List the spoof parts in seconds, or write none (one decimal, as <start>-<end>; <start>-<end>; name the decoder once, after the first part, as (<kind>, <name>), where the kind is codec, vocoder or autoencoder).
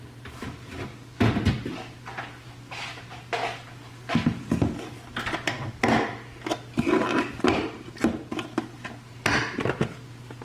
none